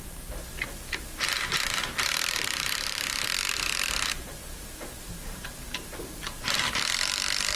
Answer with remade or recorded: remade